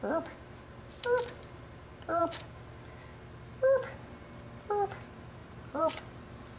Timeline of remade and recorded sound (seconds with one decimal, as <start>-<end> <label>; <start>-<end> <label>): 0.0-5.4 recorded; 5.4-6.0 remade; 6.0-6.6 recorded